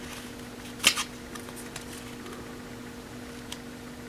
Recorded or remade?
recorded